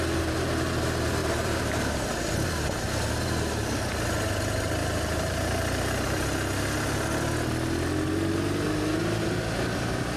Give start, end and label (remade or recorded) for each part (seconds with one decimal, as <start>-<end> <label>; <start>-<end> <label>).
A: 0.0-1.2 recorded; 1.2-2.1 remade; 2.1-4.8 recorded; 4.8-5.9 remade; 5.9-10.2 recorded